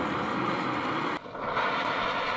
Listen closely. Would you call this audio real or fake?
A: real